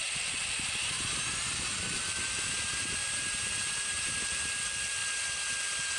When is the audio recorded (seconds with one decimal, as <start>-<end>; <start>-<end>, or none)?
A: 5.0-6.0